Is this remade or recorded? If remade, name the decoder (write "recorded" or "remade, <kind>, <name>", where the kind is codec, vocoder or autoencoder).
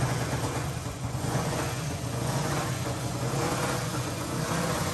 remade, vocoder, Vocos